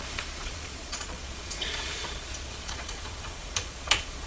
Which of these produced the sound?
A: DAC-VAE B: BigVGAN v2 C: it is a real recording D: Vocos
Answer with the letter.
D